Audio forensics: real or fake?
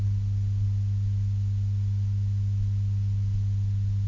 real